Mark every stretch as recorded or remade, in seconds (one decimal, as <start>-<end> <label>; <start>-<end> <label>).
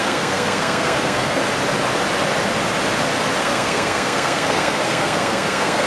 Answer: 0.0-1.4 remade; 1.4-3.4 recorded; 3.4-5.9 remade